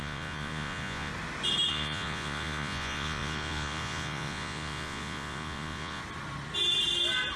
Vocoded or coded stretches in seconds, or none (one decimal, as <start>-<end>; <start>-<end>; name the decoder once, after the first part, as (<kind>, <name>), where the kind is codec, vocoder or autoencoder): 0.0-1.1 (vocoder, Vocos); 1.7-6.0

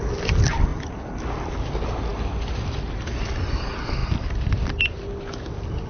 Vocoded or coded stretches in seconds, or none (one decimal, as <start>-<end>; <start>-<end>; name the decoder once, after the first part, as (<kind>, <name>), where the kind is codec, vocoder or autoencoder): none